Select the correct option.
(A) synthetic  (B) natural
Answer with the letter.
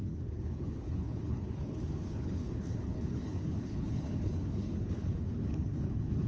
A